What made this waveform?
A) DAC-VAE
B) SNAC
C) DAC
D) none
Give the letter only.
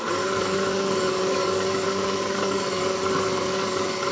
C